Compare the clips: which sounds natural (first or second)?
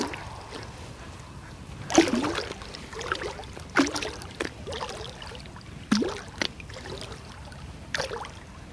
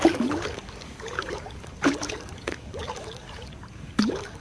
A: first